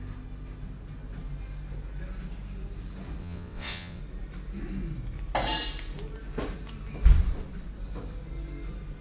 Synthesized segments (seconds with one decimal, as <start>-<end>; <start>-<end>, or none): 3.2-4.0